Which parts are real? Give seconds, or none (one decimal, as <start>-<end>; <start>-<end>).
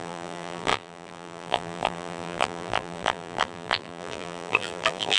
none